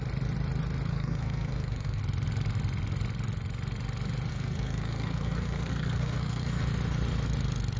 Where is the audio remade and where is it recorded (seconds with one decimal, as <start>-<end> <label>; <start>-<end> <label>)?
0.0-0.9 recorded; 0.9-2.0 remade; 2.0-4.3 recorded; 4.3-6.6 remade; 6.6-7.8 recorded